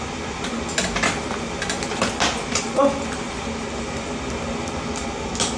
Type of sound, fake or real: real